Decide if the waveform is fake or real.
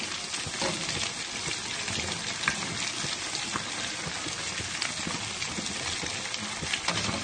real